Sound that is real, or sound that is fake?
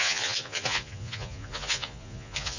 fake